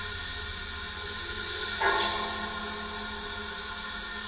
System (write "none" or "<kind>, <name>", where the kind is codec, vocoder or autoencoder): none